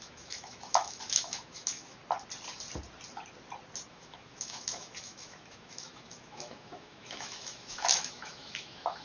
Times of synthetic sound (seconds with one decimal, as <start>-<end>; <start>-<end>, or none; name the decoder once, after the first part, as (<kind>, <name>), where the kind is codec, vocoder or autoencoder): 0.0-2.0 (autoencoder, DAC-VAE); 3.9-9.0